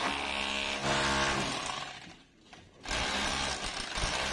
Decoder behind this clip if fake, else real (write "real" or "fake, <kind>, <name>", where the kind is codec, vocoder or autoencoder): real